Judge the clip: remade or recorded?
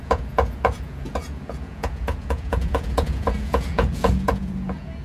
remade